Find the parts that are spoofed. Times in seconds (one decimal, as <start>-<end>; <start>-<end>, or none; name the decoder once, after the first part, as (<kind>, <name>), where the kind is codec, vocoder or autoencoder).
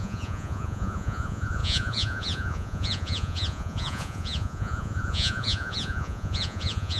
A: 0.0-7.0 (vocoder, Vocos)